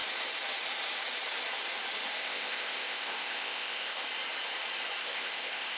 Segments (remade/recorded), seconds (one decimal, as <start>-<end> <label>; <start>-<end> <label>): 0.0-2.1 recorded; 2.1-4.0 remade; 4.0-5.0 recorded; 5.0-5.8 remade